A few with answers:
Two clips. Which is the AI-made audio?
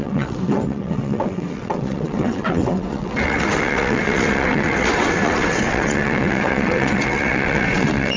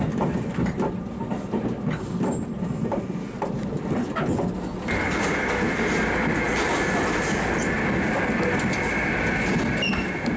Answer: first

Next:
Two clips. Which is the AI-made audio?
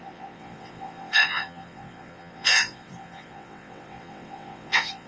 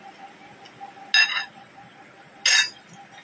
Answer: first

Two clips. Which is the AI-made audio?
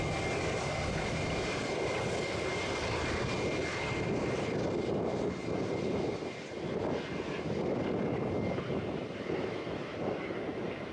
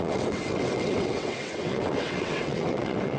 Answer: second